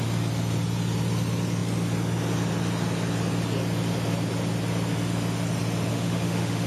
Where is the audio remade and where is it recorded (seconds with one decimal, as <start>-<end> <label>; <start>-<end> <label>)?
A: 0.0-5.9 recorded; 5.9-6.7 remade